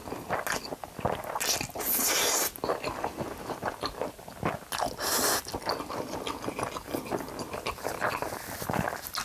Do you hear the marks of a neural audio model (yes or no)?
no